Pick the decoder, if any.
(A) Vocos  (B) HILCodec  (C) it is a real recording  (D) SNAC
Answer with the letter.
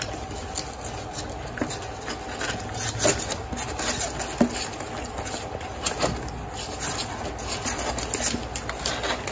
C